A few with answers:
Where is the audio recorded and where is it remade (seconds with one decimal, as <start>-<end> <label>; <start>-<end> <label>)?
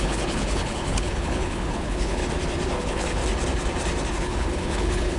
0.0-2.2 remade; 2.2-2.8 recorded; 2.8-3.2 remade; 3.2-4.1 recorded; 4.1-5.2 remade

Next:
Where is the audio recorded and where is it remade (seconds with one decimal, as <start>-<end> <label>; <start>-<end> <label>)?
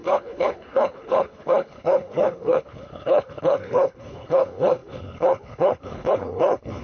0.0-6.8 remade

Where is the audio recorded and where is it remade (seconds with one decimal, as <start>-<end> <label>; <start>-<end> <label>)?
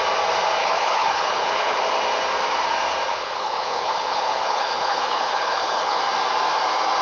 0.0-0.6 recorded; 0.6-1.8 remade; 1.8-3.1 recorded; 3.1-6.0 remade; 6.0-7.0 recorded